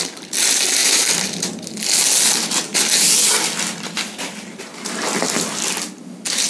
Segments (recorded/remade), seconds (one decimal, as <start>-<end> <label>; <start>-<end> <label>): 0.0-6.5 recorded